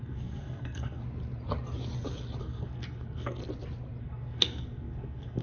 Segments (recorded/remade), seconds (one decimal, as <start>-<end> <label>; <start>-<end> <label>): 0.0-1.0 remade; 1.0-2.4 recorded; 2.4-3.4 remade; 3.4-4.0 recorded; 4.0-5.4 remade